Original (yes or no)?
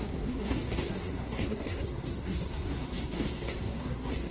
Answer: no